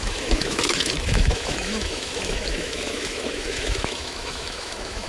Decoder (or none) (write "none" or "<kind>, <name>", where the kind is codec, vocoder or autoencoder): autoencoder, DAC-VAE